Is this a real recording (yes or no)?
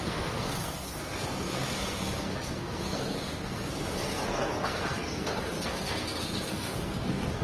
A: no